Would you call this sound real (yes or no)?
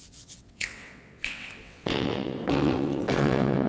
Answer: no